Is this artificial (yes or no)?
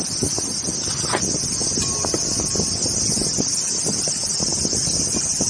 no